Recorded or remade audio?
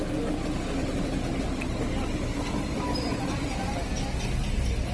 recorded